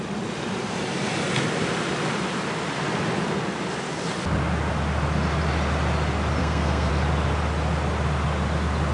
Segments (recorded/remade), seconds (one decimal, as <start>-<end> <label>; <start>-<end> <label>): 0.0-6.4 recorded; 6.4-6.9 remade; 6.9-8.9 recorded